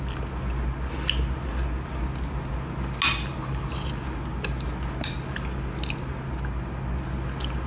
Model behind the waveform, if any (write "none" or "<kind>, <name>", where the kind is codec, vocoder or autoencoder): none